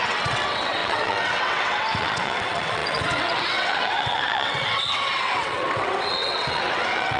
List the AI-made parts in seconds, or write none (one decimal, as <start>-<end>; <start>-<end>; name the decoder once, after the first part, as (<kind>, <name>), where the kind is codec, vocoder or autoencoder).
0.0-7.2 (vocoder, WaveNeXt)